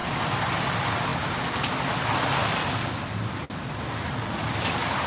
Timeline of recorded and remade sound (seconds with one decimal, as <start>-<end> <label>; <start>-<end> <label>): 0.0-5.1 recorded